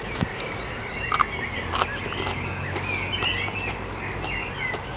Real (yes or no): yes